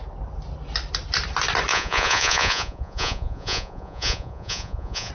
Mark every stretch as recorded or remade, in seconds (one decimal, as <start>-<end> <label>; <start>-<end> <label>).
0.0-1.7 recorded; 1.7-5.1 remade